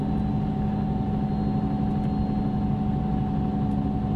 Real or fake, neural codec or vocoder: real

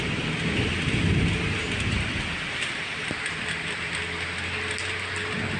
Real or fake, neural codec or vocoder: real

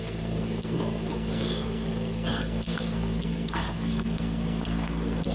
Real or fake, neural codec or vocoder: fake, codec, SNAC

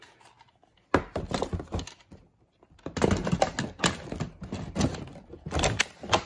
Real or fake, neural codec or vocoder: real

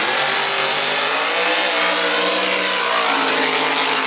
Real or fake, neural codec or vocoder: real